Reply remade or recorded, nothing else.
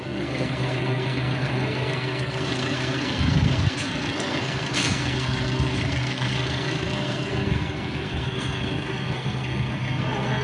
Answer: remade